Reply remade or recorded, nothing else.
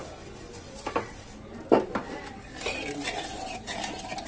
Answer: recorded